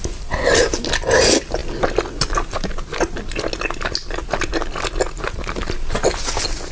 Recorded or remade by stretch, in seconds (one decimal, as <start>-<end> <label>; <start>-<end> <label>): 0.0-6.7 recorded